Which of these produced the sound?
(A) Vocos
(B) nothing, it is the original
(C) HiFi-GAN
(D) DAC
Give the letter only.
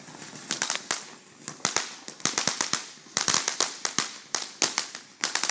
B